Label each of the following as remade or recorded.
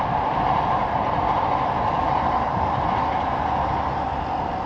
recorded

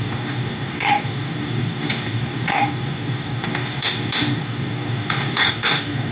remade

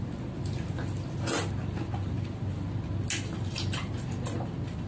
recorded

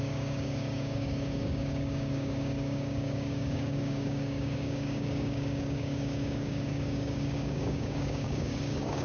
remade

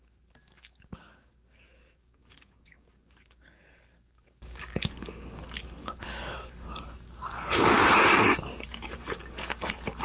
remade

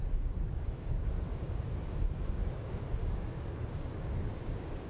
remade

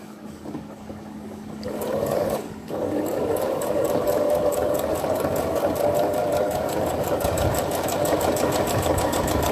remade